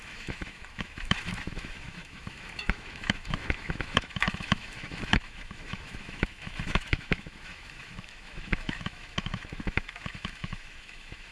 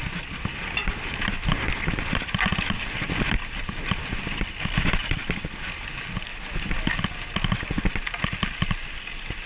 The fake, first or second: first